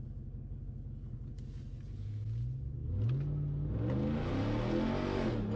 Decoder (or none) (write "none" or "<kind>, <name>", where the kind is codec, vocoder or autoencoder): none